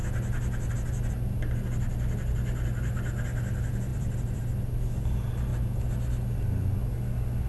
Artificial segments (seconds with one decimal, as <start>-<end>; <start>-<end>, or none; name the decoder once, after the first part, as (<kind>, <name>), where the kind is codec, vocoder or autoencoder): 3.9-4.4 (vocoder, BigVGAN v2)